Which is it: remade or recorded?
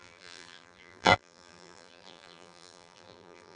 remade